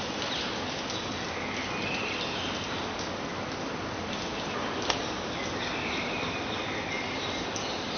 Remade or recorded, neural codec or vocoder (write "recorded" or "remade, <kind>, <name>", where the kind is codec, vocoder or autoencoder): recorded